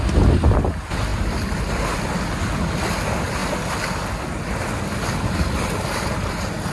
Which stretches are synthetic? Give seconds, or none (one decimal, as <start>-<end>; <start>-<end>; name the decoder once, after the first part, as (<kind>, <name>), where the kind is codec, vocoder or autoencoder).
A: none